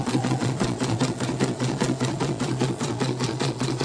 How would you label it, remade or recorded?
remade